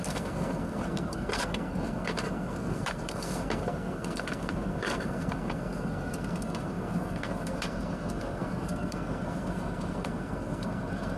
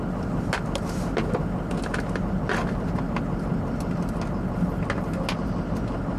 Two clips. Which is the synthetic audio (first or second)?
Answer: first